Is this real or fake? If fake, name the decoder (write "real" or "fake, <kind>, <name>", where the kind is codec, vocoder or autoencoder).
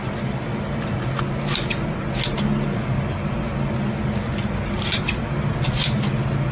real